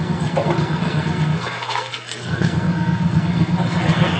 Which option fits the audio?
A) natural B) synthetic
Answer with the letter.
B